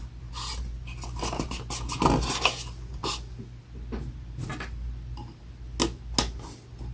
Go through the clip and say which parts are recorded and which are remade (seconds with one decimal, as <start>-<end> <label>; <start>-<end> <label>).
0.0-6.9 recorded